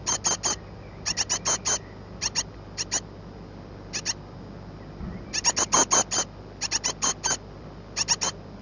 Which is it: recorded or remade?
recorded